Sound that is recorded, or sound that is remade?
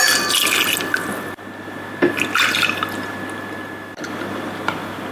recorded